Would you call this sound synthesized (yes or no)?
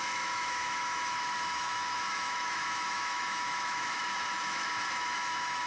yes